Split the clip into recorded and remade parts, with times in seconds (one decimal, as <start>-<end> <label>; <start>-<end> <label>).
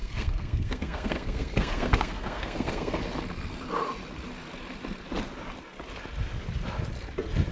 0.0-3.0 remade; 3.0-7.5 recorded